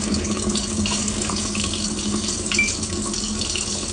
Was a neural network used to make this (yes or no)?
yes